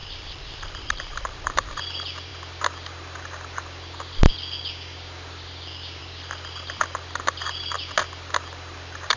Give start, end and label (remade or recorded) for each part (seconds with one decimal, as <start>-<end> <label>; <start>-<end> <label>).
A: 0.0-1.8 remade; 1.8-9.2 recorded